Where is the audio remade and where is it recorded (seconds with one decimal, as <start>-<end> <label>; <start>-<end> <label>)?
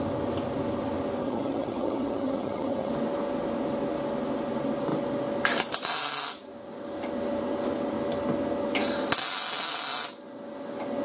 0.0-1.2 recorded; 1.2-2.9 remade; 2.9-11.0 recorded